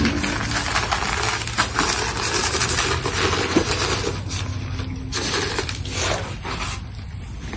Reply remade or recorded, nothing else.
recorded